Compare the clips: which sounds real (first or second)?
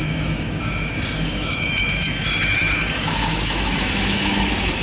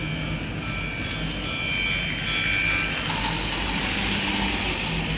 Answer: second